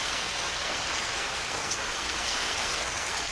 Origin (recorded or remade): remade